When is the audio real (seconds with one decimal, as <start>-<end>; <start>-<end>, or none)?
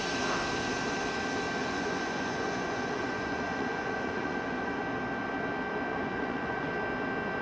0.0-1.6; 4.8-5.9; 6.7-7.4